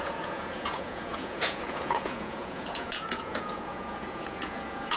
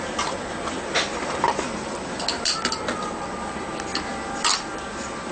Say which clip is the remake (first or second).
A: first